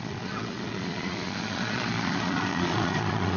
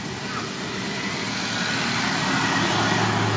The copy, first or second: first